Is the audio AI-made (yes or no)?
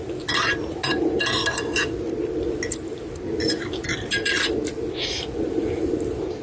no